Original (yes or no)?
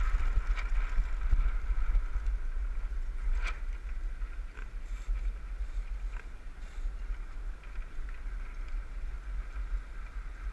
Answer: yes